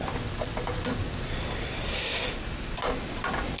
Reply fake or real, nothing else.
real